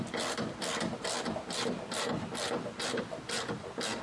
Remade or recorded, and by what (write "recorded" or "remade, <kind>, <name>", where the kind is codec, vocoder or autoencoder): remade, vocoder, BigVGAN v2